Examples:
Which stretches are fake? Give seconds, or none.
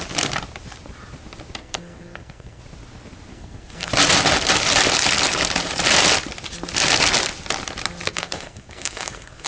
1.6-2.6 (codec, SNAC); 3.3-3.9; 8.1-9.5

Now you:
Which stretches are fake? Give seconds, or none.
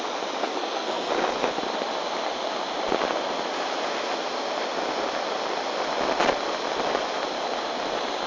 0.4-1.1 (codec, SNAC)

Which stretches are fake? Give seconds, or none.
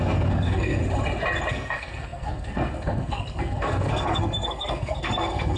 0.0-0.8 (codec, SNAC); 1.5-5.6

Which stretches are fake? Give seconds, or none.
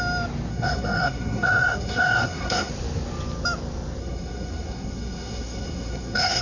0.5-2.7 (codec, SNAC); 4.0-6.4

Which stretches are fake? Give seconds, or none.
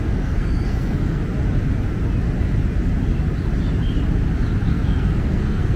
0.0-1.2 (codec, SNAC); 4.7-5.8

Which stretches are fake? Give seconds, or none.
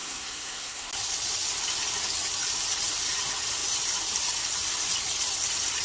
0.0-0.9 (codec, SNAC)